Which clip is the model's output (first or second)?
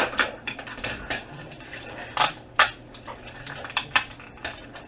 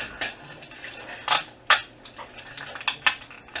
first